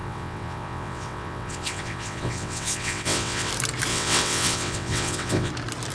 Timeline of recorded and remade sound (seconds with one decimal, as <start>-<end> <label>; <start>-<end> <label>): 0.0-3.5 remade; 3.5-3.9 recorded; 3.9-5.5 remade; 5.5-5.9 recorded

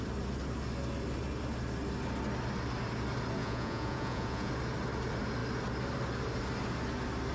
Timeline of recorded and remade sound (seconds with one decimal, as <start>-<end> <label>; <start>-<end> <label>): 0.0-3.4 recorded; 3.4-4.5 remade; 4.5-7.3 recorded

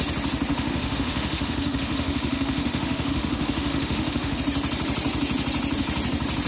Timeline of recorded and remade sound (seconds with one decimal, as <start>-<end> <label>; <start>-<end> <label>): 0.0-0.5 recorded; 0.5-4.4 remade; 4.4-6.5 recorded